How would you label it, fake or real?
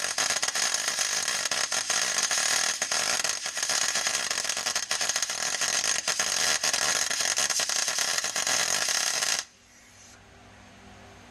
real